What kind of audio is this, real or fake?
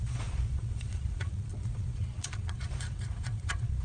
fake